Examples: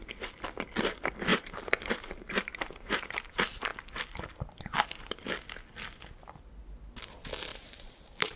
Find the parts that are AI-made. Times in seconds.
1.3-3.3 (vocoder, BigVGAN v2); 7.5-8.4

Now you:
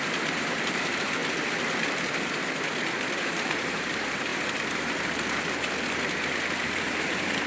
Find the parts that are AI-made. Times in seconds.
0.0-1.2 (vocoder, BigVGAN v2); 3.1-4.3; 6.5-7.5

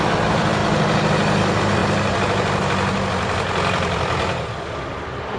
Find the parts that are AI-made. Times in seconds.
0.0-0.6 (vocoder, BigVGAN v2); 1.4-5.4

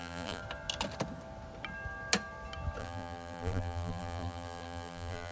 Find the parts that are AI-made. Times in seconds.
0.0-0.4 (vocoder, BigVGAN v2); 2.8-5.3

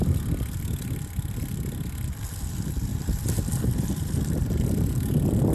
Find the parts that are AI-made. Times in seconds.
2.9-4.9 (vocoder, BigVGAN v2)